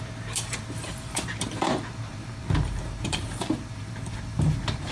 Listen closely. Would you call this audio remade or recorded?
remade